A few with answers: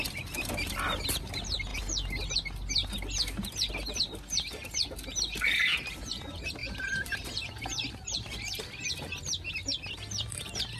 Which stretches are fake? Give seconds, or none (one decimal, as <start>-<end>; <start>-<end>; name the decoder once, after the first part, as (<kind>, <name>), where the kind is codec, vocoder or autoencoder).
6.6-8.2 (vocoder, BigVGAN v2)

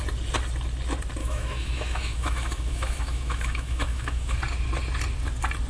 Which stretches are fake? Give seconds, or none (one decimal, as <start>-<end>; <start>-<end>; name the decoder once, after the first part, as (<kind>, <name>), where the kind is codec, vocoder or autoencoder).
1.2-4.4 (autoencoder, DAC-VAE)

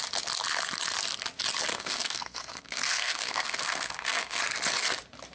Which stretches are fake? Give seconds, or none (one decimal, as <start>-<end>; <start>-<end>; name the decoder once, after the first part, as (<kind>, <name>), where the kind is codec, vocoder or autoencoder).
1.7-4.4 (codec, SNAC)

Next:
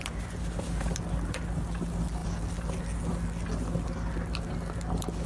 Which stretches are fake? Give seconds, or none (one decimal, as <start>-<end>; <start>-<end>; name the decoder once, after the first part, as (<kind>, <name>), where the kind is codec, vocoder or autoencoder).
none